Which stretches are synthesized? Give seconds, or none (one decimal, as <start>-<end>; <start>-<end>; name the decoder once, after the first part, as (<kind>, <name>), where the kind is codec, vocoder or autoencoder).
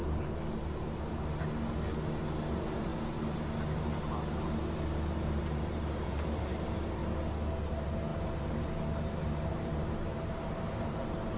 2.5-2.9 (vocoder, BigVGAN v2); 5.2-7.0; 7.7-11.4